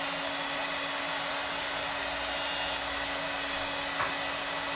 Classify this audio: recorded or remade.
recorded